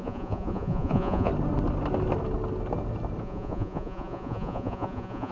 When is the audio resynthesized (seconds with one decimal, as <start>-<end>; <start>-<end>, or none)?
0.0-1.3; 3.2-5.3